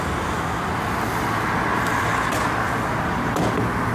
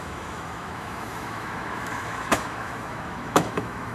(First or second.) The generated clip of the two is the second